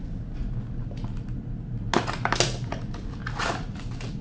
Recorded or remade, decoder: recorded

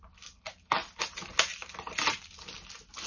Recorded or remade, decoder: recorded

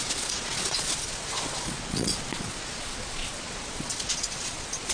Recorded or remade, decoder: remade, vocoder, Vocos